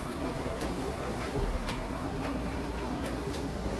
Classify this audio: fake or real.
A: fake